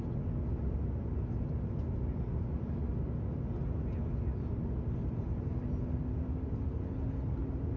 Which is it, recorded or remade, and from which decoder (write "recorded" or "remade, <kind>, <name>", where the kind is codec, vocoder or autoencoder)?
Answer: recorded